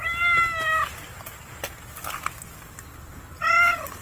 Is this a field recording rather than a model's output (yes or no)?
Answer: yes